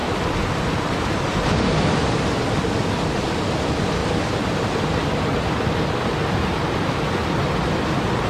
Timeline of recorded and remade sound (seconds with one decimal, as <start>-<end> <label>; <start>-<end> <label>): 0.0-3.1 remade; 3.1-4.0 recorded; 4.0-5.2 remade; 5.2-8.3 recorded